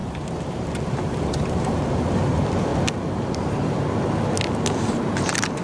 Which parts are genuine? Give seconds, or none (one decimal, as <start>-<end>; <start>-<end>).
2.7-4.9

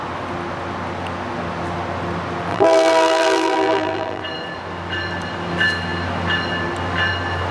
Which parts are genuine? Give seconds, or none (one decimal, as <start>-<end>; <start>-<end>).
0.0-2.5; 4.2-7.5

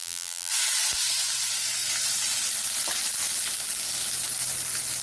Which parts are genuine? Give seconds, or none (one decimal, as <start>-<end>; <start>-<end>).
0.5-5.0

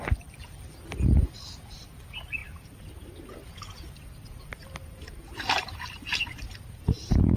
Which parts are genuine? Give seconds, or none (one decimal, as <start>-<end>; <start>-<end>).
0.0-2.4; 6.8-7.4

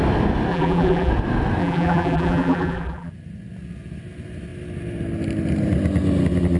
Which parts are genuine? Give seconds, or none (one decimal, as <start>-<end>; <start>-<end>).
0.0-0.5; 1.1-1.6; 3.1-6.6